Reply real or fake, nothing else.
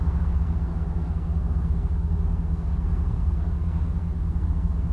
fake